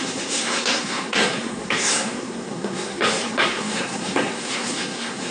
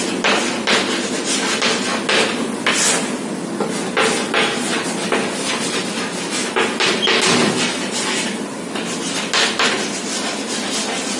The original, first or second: second